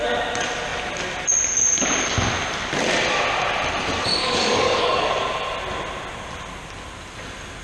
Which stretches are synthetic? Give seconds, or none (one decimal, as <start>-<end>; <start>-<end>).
4.2-5.1